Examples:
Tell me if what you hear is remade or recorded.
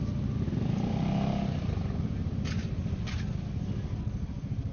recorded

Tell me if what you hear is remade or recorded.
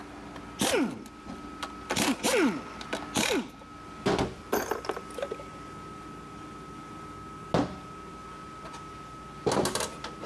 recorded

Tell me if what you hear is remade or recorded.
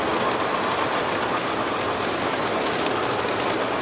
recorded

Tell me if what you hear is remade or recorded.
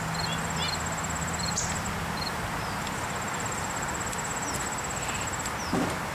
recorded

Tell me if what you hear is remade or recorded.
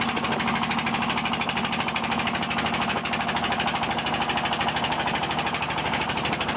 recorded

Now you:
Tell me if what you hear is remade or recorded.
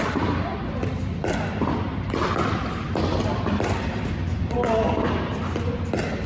remade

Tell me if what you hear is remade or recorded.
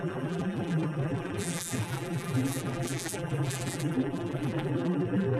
remade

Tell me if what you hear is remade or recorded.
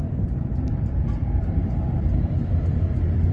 remade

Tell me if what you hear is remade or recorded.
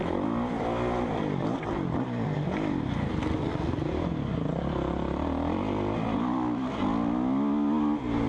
recorded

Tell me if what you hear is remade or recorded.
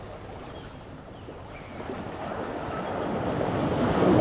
recorded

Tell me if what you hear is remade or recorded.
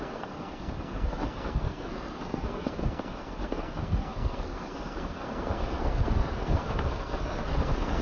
remade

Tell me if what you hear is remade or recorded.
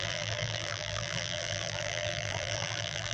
remade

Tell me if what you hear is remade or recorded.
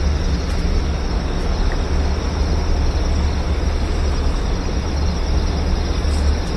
recorded